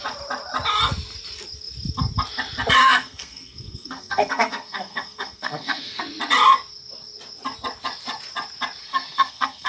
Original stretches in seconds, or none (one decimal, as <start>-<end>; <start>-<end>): 0.0-2.8; 6.0-8.8